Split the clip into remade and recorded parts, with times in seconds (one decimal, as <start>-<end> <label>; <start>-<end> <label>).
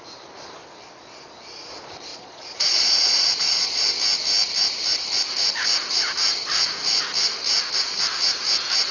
0.0-2.1 recorded; 2.1-3.8 remade; 3.8-8.9 recorded